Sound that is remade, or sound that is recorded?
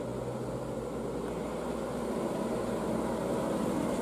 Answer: recorded